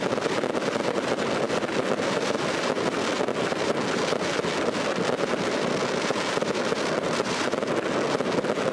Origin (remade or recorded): recorded